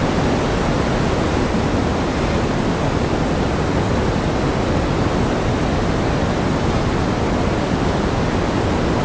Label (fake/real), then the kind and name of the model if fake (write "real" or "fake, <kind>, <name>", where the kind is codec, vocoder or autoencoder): real